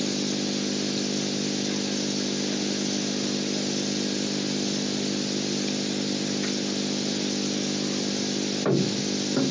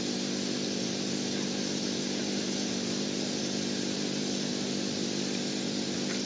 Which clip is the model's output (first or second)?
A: second